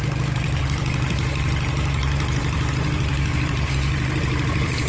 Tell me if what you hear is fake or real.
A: fake